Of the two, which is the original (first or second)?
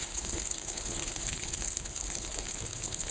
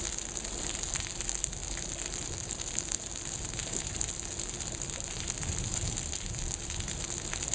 second